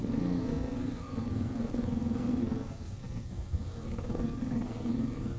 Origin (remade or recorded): remade